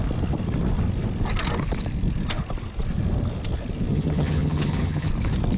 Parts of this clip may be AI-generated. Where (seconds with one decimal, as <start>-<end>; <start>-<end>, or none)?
3.9-5.1

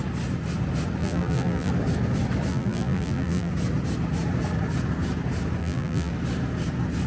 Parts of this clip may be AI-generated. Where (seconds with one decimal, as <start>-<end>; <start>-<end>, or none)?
1.0-1.7; 2.5-3.5; 5.6-6.1

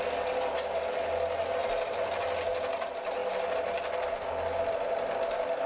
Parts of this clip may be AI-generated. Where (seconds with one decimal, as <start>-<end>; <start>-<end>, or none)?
none

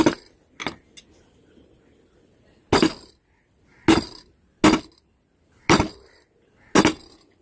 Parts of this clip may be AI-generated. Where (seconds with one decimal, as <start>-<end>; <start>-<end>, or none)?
none

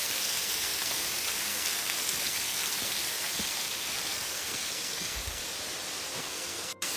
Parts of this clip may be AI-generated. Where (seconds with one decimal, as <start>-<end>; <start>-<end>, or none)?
0.0-5.4; 6.2-7.0